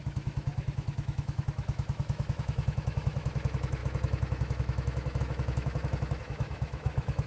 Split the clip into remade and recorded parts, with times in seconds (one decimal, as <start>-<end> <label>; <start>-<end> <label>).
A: 0.0-7.3 remade